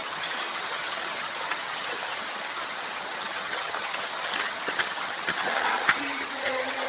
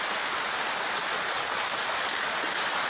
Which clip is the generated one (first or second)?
first